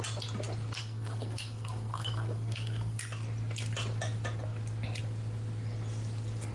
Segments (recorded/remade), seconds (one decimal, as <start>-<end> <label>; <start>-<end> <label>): 0.0-0.8 recorded; 0.8-3.0 remade; 3.0-6.5 recorded